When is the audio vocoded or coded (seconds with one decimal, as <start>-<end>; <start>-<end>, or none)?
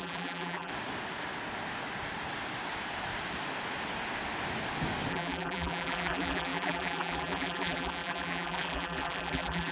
0.0-0.7; 5.1-9.7